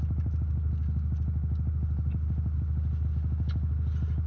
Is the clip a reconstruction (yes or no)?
no